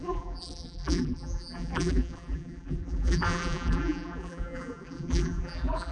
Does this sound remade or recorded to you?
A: remade